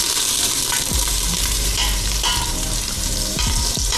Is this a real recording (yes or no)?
no